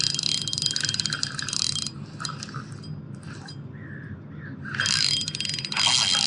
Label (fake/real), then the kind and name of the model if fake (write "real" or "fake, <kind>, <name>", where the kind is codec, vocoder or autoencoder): real